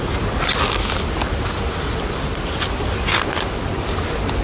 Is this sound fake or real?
real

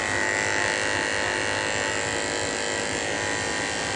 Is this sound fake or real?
real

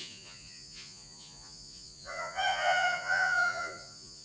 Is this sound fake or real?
fake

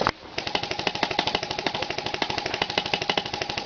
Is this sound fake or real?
real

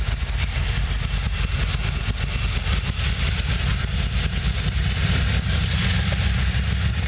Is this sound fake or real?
real